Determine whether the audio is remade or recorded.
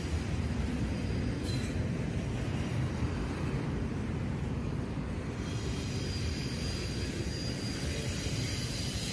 recorded